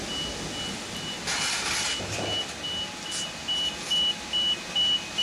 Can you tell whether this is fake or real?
real